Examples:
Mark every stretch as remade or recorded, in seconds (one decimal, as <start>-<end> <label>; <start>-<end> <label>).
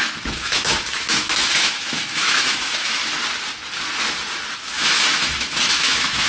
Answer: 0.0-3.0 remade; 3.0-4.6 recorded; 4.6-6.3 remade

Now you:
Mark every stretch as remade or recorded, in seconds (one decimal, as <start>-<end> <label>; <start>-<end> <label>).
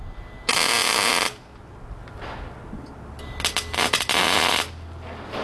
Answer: 0.0-5.4 recorded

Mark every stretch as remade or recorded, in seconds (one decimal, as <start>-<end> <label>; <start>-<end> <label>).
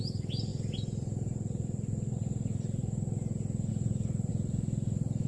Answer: 0.0-5.3 recorded